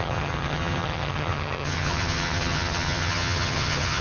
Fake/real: fake